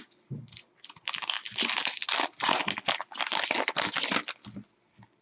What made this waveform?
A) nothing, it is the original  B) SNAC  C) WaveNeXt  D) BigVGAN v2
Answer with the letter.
A